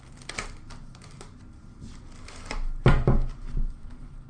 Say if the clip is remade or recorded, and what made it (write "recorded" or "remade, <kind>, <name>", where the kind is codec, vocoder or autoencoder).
recorded